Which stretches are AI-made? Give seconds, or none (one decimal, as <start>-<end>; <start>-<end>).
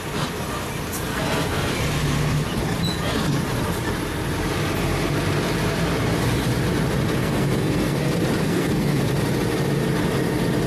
1.1-1.7; 7.2-8.0; 8.4-9.0